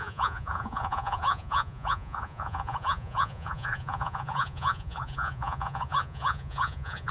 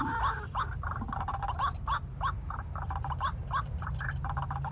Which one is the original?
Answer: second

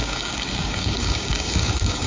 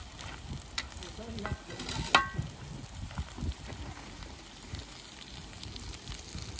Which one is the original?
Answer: second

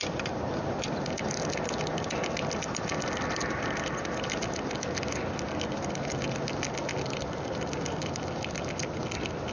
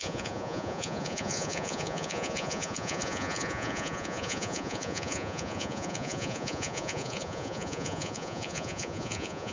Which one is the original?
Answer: first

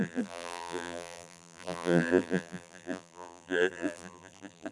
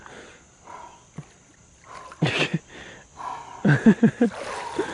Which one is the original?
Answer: second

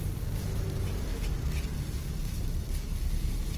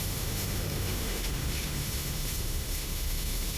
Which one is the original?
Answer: first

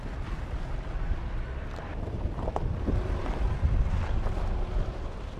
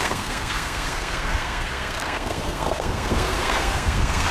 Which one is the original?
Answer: first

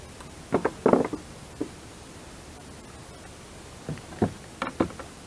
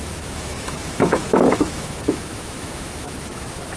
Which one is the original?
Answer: first